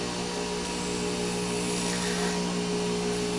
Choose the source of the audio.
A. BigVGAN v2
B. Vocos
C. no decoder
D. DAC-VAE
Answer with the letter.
C